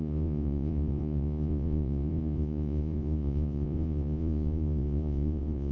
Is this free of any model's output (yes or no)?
no